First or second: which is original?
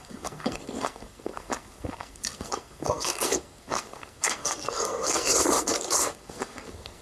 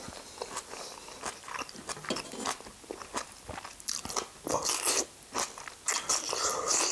second